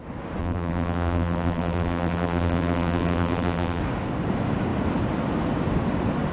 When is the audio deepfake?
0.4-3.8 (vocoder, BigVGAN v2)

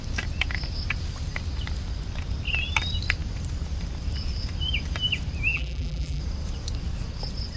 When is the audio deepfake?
5.5-6.2 (vocoder, BigVGAN v2)

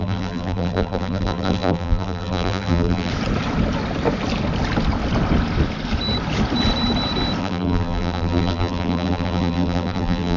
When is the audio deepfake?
0.0-3.1 (vocoder, BigVGAN v2); 7.4-10.4

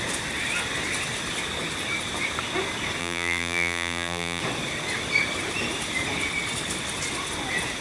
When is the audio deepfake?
3.0-4.4 (vocoder, BigVGAN v2)

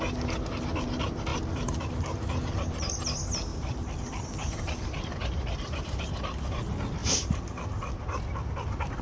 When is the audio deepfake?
1.3-3.0 (vocoder, BigVGAN v2); 3.5-6.0; 7.0-7.6

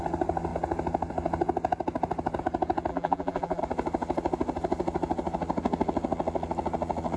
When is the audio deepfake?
2.9-3.6 (vocoder, BigVGAN v2)

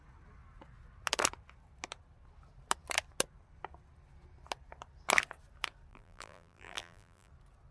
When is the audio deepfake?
5.9-7.3 (vocoder, BigVGAN v2)

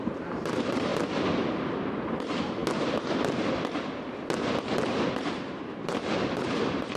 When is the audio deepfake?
0.0-0.9 (vocoder, BigVGAN v2); 1.6-2.6; 5.1-7.0